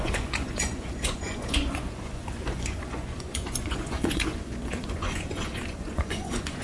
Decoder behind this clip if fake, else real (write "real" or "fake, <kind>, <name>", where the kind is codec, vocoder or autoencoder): fake, vocoder, Vocos